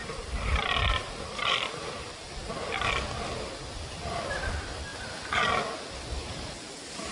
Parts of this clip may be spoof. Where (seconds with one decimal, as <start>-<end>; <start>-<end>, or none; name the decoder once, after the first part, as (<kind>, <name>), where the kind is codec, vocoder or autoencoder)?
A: 0.0-2.9 (vocoder, BigVGAN v2); 6.2-7.1